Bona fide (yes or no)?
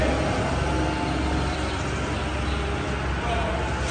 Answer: yes